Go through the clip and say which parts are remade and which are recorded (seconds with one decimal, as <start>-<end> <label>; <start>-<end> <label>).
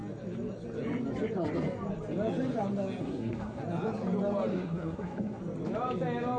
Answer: 0.0-3.0 recorded; 3.0-3.6 remade; 3.6-4.5 recorded; 4.5-5.4 remade; 5.4-6.4 recorded